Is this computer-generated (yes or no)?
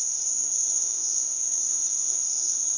yes